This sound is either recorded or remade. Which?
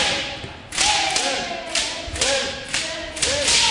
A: recorded